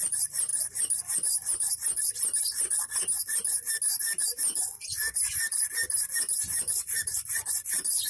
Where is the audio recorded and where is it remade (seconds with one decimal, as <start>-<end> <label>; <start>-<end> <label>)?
0.0-8.1 recorded